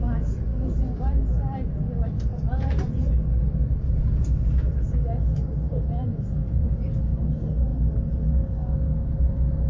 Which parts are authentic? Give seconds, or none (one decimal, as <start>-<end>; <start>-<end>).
0.0-6.1; 7.0-9.7